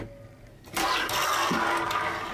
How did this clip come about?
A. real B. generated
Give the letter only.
A